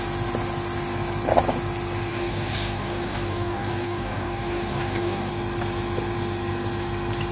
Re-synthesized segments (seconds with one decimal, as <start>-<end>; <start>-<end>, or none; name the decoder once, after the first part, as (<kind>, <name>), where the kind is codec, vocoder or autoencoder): 2.1-5.3 (codec, DAC)